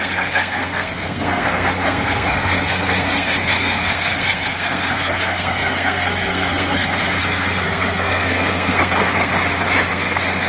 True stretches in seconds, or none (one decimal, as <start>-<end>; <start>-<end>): 9.3-9.9